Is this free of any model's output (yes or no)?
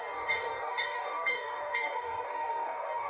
no